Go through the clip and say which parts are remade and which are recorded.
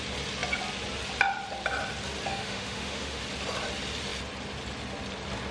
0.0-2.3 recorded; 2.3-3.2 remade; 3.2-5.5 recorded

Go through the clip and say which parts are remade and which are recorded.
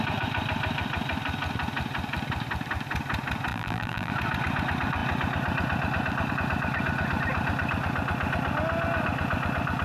0.0-3.5 recorded; 3.5-4.1 remade; 4.1-9.8 recorded